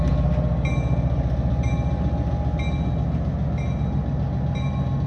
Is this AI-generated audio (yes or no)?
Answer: no